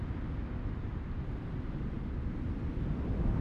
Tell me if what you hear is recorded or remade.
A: recorded